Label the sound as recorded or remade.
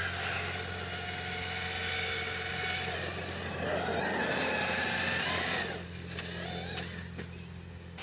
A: recorded